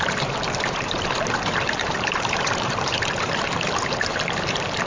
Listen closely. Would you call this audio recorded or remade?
remade